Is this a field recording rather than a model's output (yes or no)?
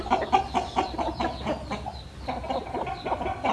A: yes